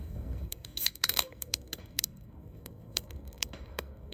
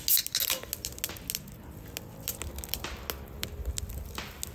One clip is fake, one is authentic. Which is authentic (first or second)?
second